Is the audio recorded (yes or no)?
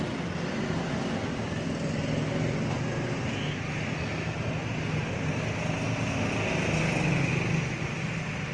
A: yes